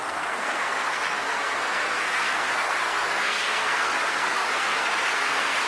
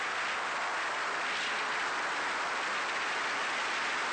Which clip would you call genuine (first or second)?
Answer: second